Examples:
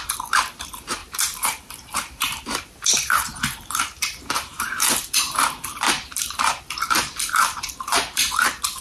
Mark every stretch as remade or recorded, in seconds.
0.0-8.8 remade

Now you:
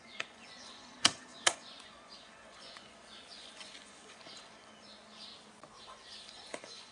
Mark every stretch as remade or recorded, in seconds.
0.0-5.3 remade; 5.3-5.8 recorded; 5.8-6.9 remade

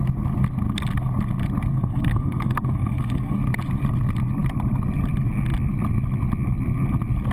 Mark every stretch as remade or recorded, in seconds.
0.0-1.7 recorded; 1.7-3.4 remade; 3.4-7.3 recorded

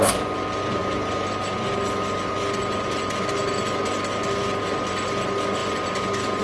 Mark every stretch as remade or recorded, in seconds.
0.0-6.4 recorded

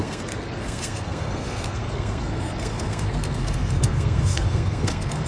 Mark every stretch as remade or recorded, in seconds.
0.0-5.3 remade

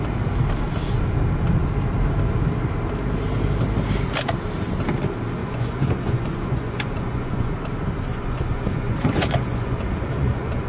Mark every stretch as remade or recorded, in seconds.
0.0-5.4 recorded; 5.4-7.5 remade; 7.5-8.1 recorded; 8.1-10.7 remade